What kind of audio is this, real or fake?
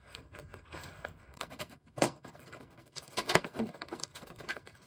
fake